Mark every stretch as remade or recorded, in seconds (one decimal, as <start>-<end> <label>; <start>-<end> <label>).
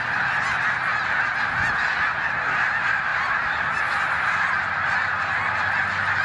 0.0-6.2 recorded